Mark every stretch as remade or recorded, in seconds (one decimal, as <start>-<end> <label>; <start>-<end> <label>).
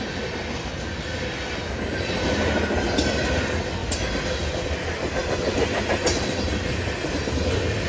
0.0-7.9 recorded